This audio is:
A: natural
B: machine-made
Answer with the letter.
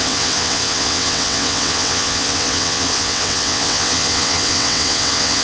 B